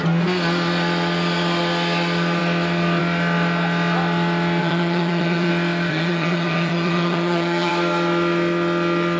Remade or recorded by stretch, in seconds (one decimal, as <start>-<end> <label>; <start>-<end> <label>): 0.0-4.6 recorded; 4.6-5.5 remade; 5.5-5.9 recorded; 5.9-7.7 remade; 7.7-9.2 recorded